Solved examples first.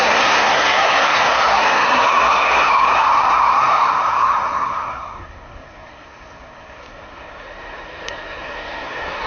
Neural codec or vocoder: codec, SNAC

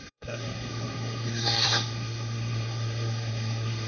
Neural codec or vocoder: codec, SNAC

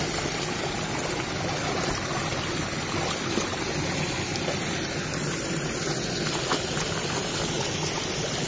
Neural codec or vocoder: none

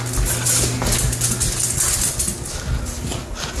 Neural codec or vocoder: none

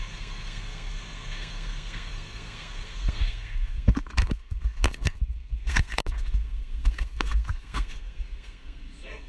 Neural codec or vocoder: codec, SNAC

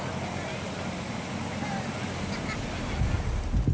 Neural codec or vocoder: none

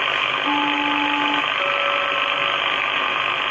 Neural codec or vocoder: none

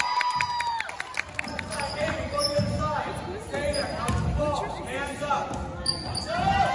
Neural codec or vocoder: none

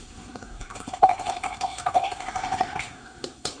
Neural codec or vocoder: codec, SNAC